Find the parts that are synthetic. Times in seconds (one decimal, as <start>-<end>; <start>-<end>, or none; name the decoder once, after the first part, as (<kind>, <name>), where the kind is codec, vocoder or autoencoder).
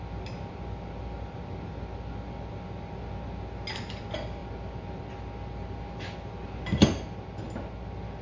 none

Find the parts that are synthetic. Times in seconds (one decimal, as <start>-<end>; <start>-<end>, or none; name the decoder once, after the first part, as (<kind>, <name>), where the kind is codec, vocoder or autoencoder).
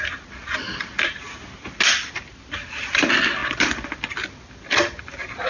none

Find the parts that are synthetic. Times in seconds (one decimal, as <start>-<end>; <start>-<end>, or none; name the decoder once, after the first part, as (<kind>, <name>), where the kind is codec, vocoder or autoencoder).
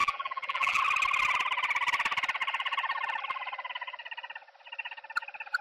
0.0-0.8 (vocoder, BigVGAN v2)